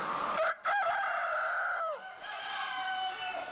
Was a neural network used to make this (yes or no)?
yes